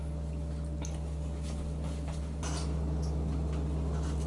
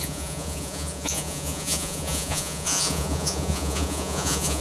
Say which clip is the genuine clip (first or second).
first